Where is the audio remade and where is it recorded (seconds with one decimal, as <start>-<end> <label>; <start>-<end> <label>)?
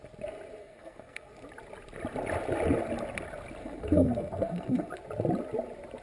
0.0-0.6 recorded; 0.6-1.3 remade; 1.3-3.6 recorded; 3.6-4.9 remade; 4.9-6.0 recorded